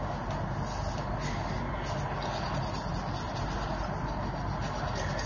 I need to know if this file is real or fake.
real